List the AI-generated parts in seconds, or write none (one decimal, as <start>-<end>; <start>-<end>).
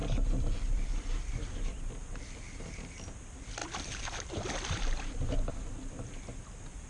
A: 0.0-1.9; 3.6-5.5